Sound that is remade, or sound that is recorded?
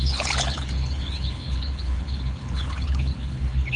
remade